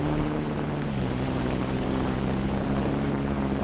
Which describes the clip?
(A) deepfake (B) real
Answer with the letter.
A